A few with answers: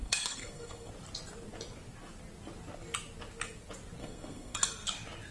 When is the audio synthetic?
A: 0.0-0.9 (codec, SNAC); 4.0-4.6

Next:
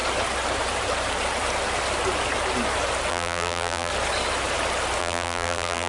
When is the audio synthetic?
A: 3.1-3.9 (vocoder, BigVGAN v2); 5.0-5.9

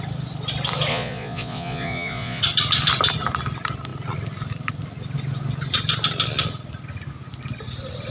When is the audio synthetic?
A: 0.9-2.4 (vocoder, Vocos)

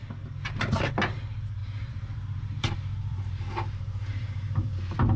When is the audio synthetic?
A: 1.6-4.7 (vocoder, BigVGAN v2)

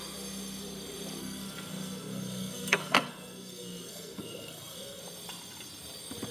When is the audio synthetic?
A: 1.2-5.0 (codec, SNAC)